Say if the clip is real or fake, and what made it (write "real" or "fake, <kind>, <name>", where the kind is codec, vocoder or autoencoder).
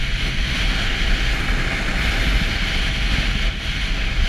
real